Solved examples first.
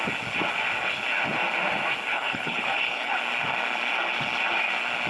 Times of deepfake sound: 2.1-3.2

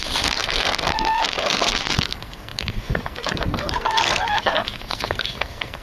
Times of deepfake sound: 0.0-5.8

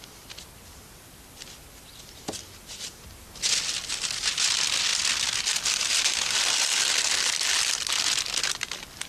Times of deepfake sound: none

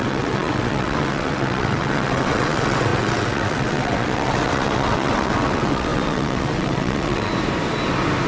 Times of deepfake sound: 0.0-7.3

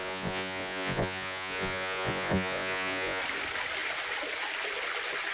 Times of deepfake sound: 0.0-3.2

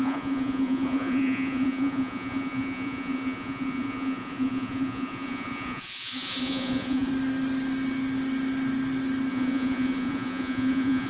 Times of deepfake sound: 0.0-7.1; 9.3-11.1

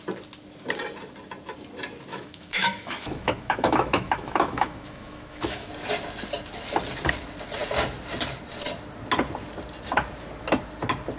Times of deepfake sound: 2.1-5.7